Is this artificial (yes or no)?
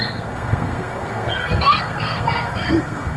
yes